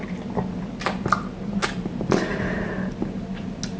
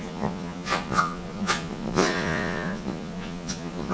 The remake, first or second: second